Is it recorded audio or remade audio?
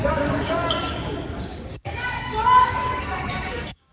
remade